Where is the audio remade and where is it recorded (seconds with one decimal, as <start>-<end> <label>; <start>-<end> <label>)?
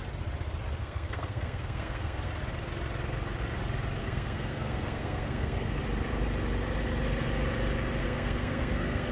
0.0-0.8 recorded; 0.8-2.3 remade; 2.3-4.0 recorded; 4.0-5.8 remade; 5.8-8.0 recorded; 8.0-9.1 remade